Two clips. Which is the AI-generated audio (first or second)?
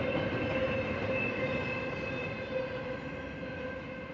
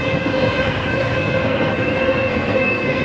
second